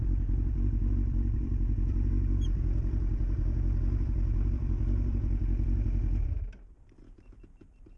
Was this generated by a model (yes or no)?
yes